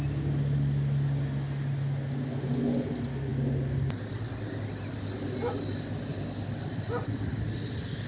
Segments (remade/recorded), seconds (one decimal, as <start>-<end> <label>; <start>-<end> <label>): 0.0-8.1 recorded